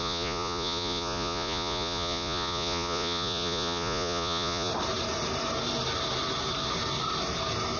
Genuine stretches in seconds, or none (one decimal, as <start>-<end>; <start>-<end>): 4.7-7.8

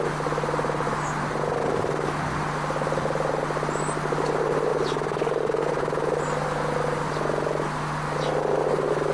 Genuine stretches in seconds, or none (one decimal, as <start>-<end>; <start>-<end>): 0.0-9.1

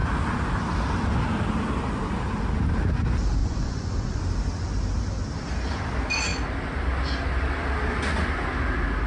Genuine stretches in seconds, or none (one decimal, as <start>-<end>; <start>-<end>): 0.0-3.4; 4.2-9.1

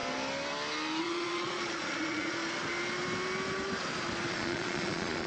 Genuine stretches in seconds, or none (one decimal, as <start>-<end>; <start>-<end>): 0.0-1.0; 2.4-4.3

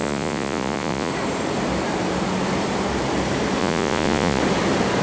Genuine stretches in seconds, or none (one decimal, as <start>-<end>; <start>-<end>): 1.1-3.6; 4.4-5.0

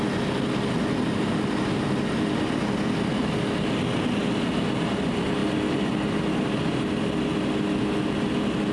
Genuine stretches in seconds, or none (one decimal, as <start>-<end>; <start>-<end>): 0.0-8.7

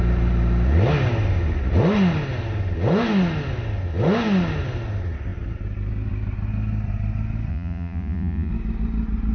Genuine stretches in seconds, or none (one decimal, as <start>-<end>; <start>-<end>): 0.0-7.5; 8.5-9.3

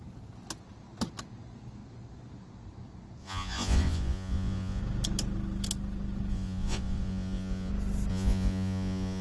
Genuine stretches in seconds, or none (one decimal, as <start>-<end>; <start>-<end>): 0.0-3.2; 4.8-6.3; 7.7-8.1